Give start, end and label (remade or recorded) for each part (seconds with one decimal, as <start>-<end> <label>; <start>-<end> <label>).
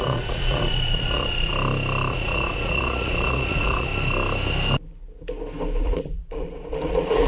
0.0-1.5 remade; 1.5-2.1 recorded; 2.1-3.9 remade; 3.9-5.8 recorded; 5.8-7.3 remade